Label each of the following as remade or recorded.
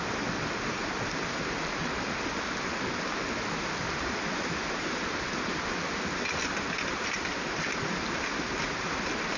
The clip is recorded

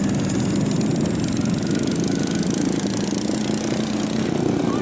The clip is recorded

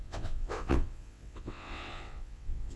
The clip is remade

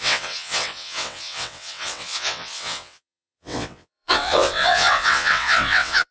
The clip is remade